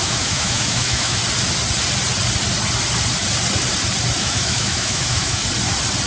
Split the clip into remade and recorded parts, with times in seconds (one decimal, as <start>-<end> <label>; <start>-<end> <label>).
0.0-1.2 remade; 1.2-4.2 recorded; 4.2-5.4 remade; 5.4-6.1 recorded